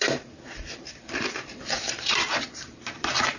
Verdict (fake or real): fake